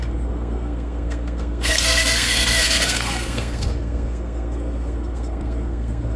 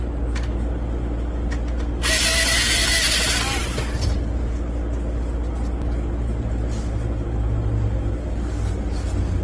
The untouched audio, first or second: second